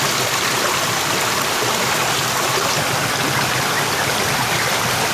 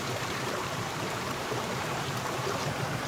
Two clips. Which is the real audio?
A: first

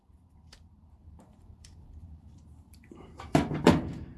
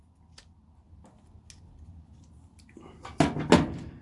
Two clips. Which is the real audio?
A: second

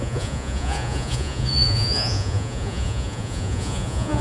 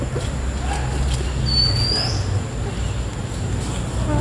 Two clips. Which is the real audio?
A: second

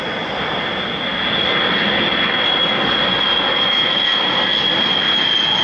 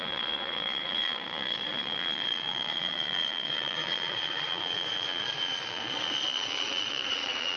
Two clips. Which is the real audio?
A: first